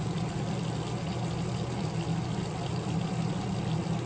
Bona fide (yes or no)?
yes